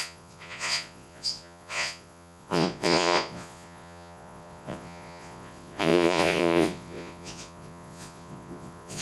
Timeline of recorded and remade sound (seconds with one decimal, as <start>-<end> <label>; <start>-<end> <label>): 0.0-9.0 remade